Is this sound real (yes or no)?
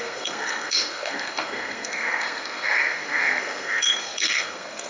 no